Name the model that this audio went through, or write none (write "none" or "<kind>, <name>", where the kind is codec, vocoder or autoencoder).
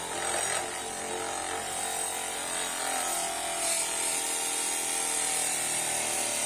none